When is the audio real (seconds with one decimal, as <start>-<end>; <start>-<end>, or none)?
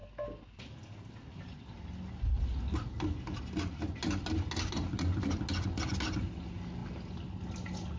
0.0-8.0